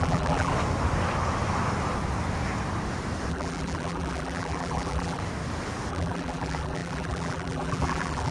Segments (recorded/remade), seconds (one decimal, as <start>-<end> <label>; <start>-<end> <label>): 0.0-0.5 remade; 0.5-3.3 recorded; 3.3-5.2 remade; 5.2-5.9 recorded; 5.9-8.3 remade